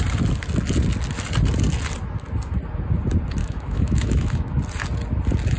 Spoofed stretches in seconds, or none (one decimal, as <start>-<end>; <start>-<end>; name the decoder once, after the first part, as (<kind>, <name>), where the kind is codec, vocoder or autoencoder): 3.4-4.6 (autoencoder, DAC-VAE)